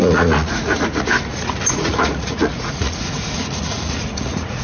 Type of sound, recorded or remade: remade